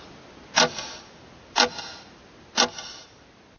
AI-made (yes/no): no